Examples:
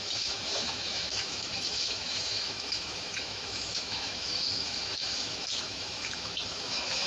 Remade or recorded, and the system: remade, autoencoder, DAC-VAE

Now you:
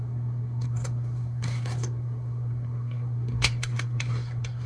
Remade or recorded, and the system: remade, codec, SNAC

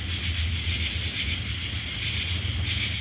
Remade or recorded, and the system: recorded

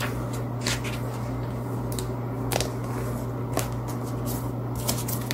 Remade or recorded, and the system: recorded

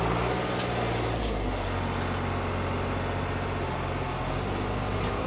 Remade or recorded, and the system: recorded